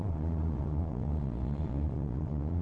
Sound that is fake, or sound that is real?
fake